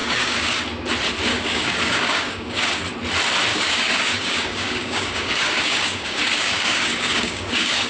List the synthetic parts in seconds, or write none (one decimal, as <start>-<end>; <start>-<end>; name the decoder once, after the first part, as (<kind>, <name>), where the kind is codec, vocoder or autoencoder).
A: 0.0-0.6 (codec, DAC); 1.3-2.8; 3.5-7.9

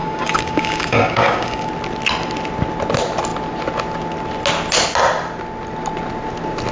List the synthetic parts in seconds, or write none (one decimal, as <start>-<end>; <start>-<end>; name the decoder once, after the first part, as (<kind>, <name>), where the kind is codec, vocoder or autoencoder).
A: 0.0-1.7 (codec, DAC)

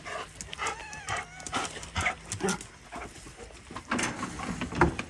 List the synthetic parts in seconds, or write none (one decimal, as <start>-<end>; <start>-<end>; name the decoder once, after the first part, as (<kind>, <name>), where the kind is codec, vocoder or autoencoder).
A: none

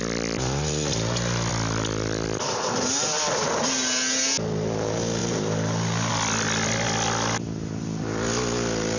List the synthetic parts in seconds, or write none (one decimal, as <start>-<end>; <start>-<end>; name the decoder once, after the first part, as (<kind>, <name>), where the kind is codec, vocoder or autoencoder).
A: none

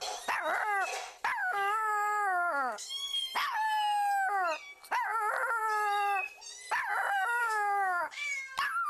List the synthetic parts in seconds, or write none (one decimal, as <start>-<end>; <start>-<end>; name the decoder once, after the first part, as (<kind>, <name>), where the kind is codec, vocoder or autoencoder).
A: 1.4-2.9 (codec, DAC); 7.4-8.3

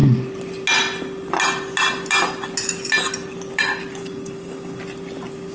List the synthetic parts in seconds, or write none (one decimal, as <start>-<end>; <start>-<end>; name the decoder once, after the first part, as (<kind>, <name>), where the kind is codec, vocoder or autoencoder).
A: 4.0-4.8 (codec, DAC)